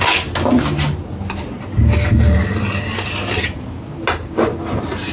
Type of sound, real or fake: real